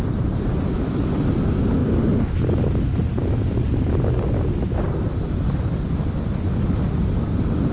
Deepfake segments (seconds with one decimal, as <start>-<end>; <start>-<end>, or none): none

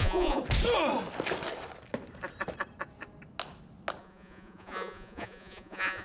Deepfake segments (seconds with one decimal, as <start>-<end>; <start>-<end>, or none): 0.0-0.4; 4.0-6.0

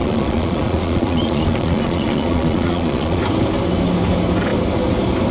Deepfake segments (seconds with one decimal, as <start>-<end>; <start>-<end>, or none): 0.0-3.2

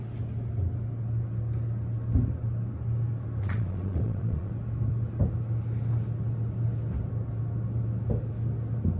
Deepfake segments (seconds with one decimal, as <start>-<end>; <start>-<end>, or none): 3.4-4.5

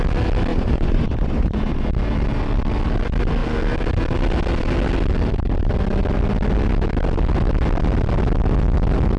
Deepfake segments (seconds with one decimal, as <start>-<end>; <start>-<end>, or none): 0.5-1.9

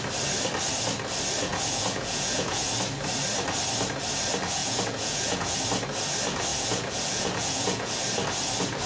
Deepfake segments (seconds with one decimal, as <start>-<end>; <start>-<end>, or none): 1.5-2.7; 4.6-5.6; 6.5-7.9

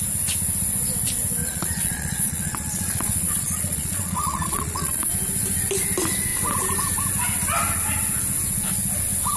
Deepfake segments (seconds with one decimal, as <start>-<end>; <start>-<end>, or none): 1.4-5.1

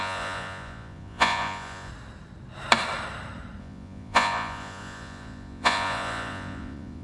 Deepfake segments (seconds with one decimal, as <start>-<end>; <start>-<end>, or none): 0.0-1.9; 3.6-7.0